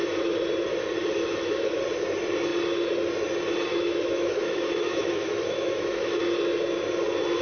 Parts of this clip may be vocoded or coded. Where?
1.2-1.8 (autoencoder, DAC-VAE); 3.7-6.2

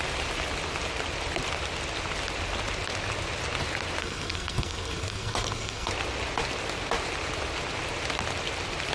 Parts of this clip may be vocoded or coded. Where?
4.0-5.9 (codec, SNAC)

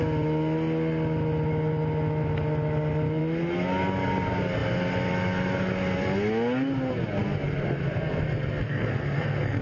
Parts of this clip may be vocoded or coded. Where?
8.6-9.6 (codec, SNAC)